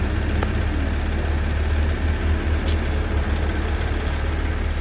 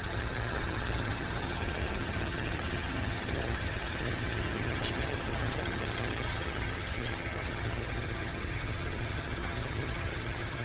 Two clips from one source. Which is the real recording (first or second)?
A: first